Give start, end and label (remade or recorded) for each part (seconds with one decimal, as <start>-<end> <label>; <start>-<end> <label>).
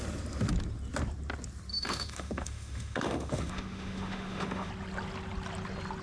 0.0-1.7 recorded; 1.7-4.7 remade; 4.7-6.0 recorded